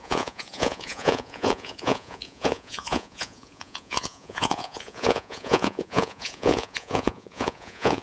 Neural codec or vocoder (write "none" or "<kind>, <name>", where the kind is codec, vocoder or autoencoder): vocoder, Vocos